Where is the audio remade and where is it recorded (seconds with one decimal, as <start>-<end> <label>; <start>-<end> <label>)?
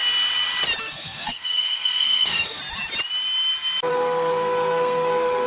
0.0-0.8 recorded; 0.8-2.6 remade; 2.6-3.9 recorded; 3.9-5.5 remade